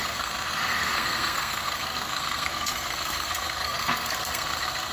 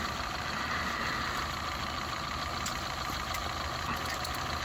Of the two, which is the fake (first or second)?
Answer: first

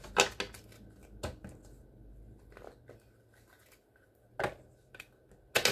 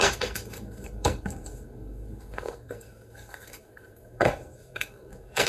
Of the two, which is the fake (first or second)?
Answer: second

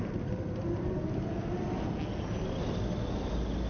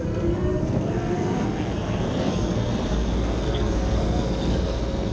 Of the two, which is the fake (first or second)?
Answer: second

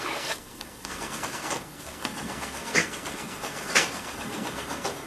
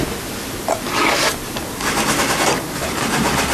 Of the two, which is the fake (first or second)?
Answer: first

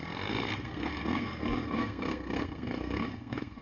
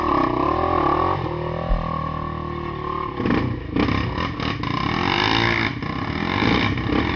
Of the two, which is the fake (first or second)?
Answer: first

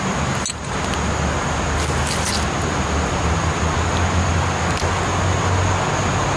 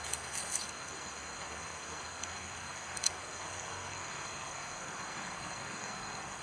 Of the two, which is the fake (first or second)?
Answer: second